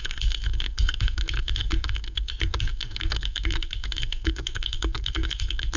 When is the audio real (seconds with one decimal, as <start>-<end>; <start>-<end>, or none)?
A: none